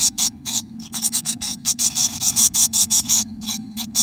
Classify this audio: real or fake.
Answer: fake